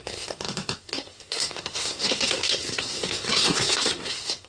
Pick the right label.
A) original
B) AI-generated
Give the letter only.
B